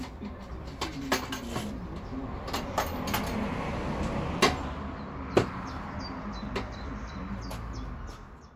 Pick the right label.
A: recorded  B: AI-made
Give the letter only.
A